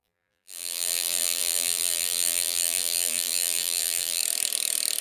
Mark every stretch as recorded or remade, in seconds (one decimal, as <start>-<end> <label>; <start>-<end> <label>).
0.0-4.2 remade; 4.2-5.0 recorded